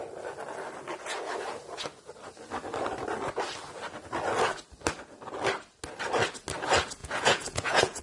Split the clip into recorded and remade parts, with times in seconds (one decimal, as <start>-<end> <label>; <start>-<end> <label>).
0.0-7.0 recorded; 7.0-8.0 remade